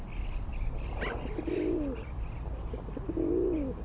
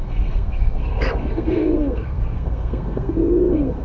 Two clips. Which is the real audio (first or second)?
first